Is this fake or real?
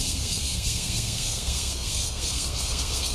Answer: fake